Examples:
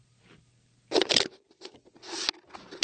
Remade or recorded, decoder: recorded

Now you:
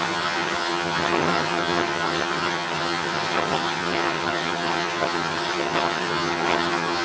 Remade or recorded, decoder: remade, vocoder, HiFi-GAN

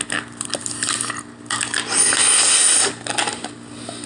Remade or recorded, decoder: recorded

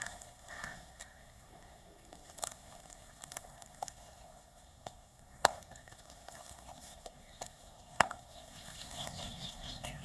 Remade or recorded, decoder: remade, codec, SNAC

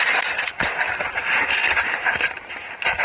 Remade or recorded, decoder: recorded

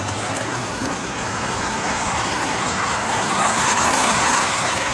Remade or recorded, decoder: remade, codec, SNAC